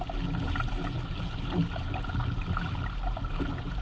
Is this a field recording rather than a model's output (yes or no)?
yes